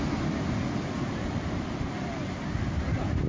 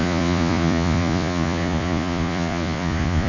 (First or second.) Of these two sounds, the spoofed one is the second